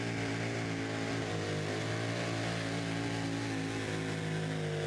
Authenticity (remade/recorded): recorded